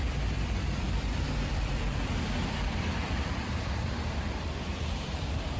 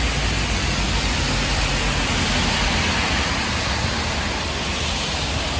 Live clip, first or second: second